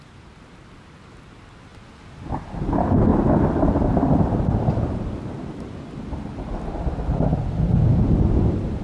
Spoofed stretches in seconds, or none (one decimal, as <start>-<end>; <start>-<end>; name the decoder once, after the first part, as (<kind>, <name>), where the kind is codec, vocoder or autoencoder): none